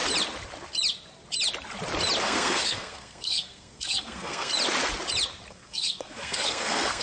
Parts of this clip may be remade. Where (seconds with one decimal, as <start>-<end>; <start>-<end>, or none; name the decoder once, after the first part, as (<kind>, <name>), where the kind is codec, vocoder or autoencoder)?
2.2-4.5 (codec, SNAC); 5.5-7.0